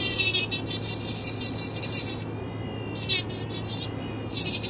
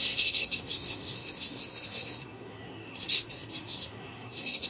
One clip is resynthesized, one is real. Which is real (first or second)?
first